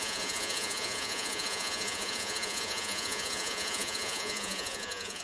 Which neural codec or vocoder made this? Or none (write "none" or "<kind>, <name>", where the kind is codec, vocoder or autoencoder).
vocoder, Vocos